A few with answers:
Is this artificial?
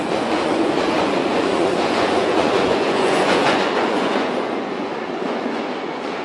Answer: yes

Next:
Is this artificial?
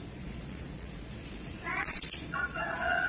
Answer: yes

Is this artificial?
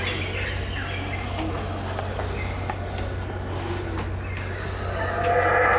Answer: no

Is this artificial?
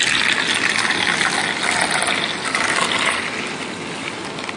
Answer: no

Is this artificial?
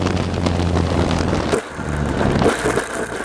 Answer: no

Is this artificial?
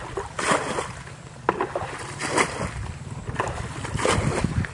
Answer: no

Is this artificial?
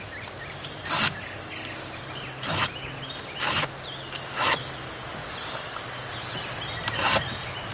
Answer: no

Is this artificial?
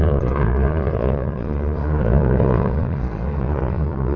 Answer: yes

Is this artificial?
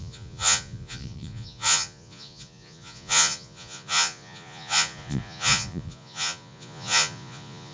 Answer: yes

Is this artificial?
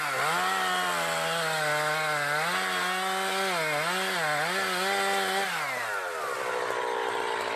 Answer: no